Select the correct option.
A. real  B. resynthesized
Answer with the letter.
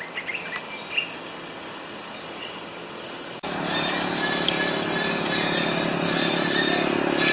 A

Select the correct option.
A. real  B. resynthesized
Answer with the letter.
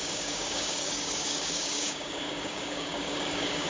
B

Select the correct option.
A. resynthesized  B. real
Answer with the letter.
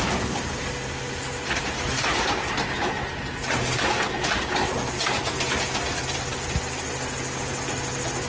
B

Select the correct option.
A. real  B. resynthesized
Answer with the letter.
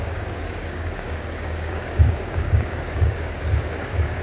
B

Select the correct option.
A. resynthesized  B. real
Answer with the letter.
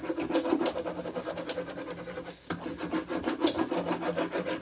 B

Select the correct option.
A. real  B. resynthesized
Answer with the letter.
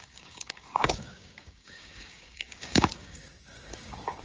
B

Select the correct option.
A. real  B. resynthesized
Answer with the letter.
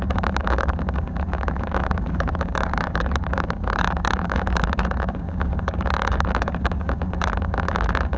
B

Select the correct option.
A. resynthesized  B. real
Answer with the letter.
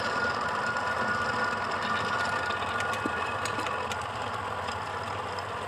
B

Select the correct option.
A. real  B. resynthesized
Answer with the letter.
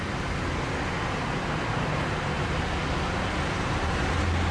A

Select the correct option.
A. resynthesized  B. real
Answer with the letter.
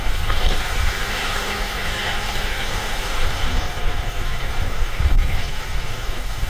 A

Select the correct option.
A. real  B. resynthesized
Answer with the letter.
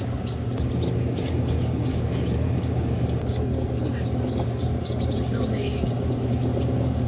B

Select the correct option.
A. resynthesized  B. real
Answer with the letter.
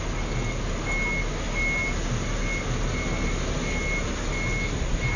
B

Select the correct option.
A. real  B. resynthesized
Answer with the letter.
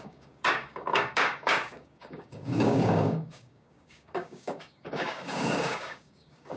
B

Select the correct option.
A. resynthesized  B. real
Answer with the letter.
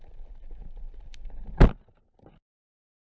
B